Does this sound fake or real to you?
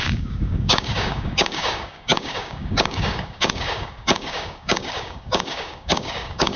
fake